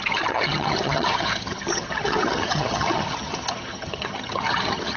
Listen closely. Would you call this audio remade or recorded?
remade